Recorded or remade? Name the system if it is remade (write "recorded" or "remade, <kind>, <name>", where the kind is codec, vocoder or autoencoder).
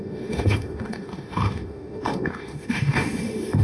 remade, autoencoder, DAC-VAE